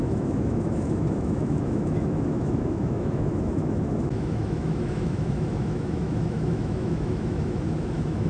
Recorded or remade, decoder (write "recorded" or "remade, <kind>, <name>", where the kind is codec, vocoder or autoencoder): remade, autoencoder, DAC-VAE